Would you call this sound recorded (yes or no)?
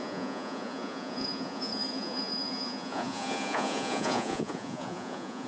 no